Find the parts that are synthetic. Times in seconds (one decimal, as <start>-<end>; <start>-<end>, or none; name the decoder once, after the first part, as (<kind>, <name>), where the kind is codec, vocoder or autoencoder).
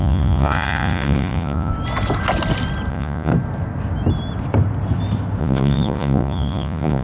0.0-1.7 (vocoder, Vocos); 2.9-3.3; 5.4-7.0